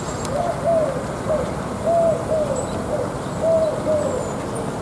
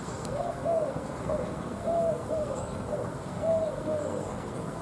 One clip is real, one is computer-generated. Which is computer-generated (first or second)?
second